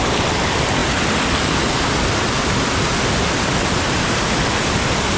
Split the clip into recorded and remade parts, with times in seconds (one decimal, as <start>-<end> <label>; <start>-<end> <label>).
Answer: 0.0-5.2 recorded